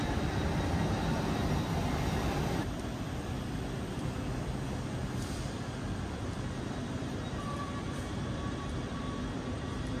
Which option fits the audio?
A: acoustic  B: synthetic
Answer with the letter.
B